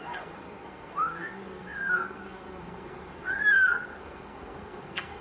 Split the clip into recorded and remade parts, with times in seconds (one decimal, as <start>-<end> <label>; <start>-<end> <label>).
0.0-5.2 remade